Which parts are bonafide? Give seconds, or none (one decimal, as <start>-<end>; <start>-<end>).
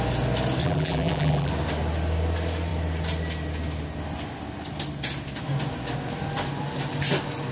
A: 0.0-0.6; 1.5-7.5